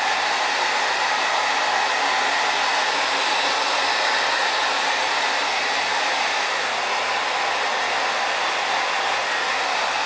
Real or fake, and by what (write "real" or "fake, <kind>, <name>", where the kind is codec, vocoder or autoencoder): real